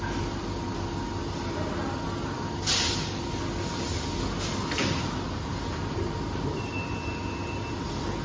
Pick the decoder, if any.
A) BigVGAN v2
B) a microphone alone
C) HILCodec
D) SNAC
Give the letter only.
B